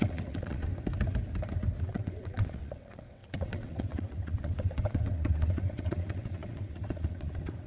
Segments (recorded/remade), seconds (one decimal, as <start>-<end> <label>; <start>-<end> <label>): 0.0-0.7 remade; 0.7-1.8 recorded; 1.8-7.7 remade